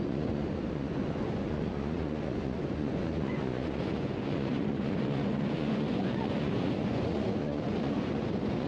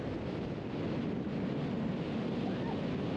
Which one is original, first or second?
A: second